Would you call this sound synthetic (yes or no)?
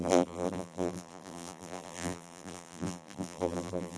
yes